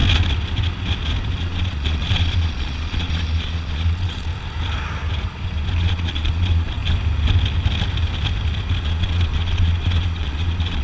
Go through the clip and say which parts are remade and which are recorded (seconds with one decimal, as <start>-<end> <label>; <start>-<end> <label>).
0.0-1.4 recorded; 1.4-4.3 remade; 4.3-5.8 recorded; 5.8-6.8 remade; 6.8-8.8 recorded; 8.8-10.8 remade